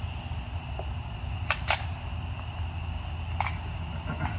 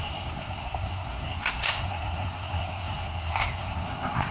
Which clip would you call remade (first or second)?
second